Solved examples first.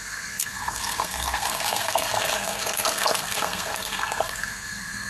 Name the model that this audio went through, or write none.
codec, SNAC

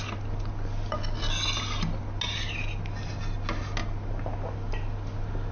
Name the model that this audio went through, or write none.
none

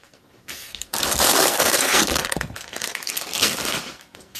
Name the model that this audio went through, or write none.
codec, SNAC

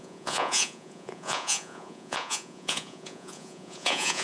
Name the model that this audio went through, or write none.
vocoder, Vocos